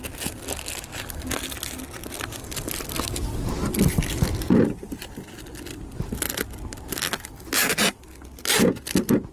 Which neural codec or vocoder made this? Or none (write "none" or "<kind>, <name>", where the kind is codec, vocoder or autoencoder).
none